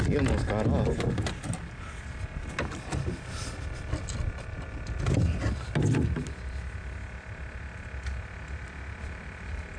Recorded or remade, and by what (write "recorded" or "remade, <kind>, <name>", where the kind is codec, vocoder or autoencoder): recorded